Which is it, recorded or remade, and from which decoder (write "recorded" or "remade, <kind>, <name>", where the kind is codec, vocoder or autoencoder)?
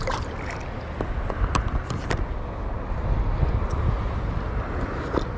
recorded